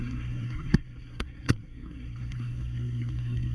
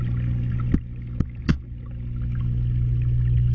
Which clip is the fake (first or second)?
first